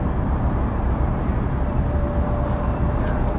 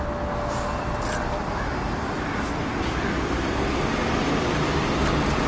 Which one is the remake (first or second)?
first